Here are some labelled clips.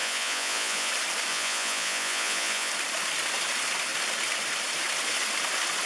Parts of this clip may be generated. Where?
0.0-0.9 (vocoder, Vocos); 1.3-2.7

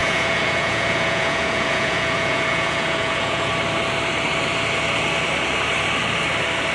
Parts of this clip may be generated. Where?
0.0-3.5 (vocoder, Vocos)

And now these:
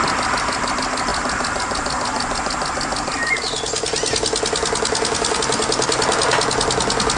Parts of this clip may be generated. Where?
none